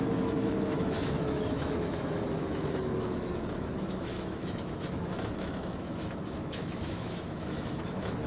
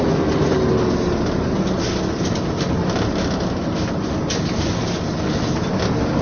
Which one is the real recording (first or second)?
second